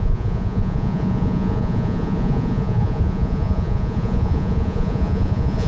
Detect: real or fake fake